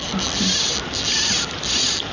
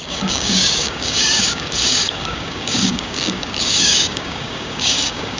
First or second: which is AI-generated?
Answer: second